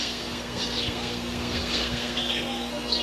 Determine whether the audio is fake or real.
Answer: fake